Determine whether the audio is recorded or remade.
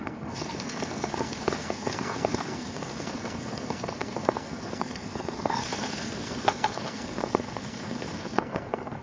remade